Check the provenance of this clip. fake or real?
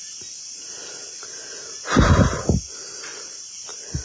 real